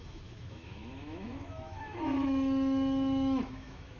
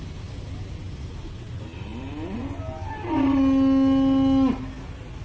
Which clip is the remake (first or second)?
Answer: first